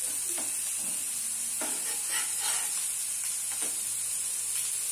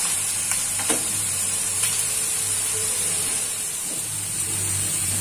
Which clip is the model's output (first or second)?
second